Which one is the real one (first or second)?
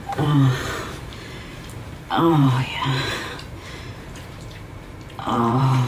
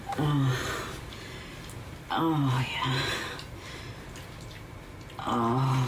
second